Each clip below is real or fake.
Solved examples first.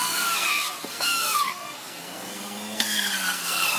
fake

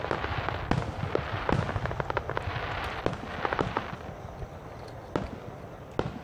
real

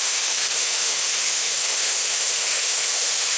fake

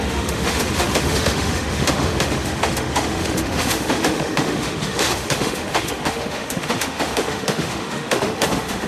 fake